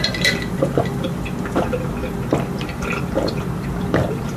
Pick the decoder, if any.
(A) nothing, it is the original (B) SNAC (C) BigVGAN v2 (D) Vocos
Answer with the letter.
C